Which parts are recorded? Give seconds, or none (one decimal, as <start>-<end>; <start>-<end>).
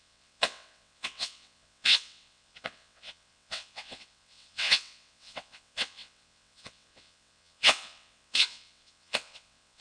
none